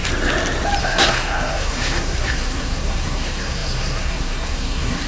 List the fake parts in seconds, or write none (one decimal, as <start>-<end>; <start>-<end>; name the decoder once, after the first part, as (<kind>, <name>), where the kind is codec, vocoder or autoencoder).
0.8-5.1 (codec, SNAC)